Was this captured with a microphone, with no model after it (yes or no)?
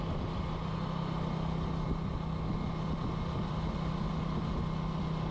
yes